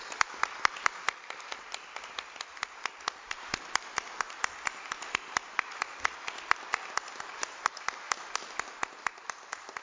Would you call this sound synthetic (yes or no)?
yes